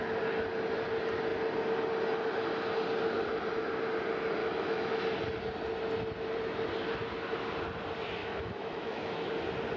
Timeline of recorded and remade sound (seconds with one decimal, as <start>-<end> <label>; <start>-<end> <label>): 0.0-4.4 recorded; 4.4-5.0 remade; 5.0-8.2 recorded; 8.2-9.3 remade; 9.3-9.8 recorded